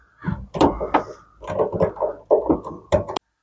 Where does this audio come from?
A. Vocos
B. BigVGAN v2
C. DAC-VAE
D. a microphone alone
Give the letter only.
D